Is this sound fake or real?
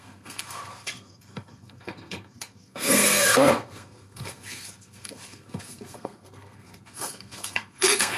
fake